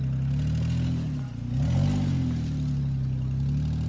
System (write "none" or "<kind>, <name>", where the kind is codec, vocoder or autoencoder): none